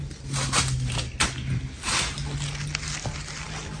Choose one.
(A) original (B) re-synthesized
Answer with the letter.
A